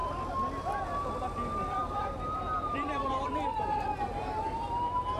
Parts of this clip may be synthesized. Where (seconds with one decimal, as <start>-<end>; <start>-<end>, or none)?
0.0-5.2